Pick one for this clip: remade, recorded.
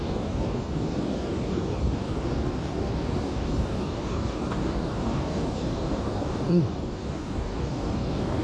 remade